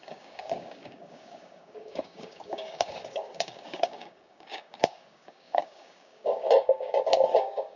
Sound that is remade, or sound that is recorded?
remade